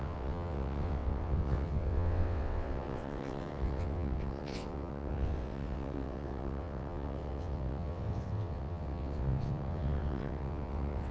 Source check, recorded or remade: remade